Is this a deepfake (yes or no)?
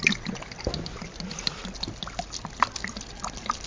no